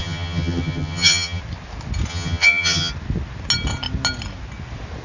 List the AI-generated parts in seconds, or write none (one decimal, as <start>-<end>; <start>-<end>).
0.0-1.4; 2.1-2.9